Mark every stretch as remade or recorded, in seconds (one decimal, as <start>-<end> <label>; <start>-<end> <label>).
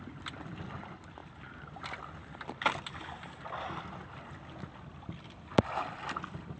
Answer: 0.0-6.6 recorded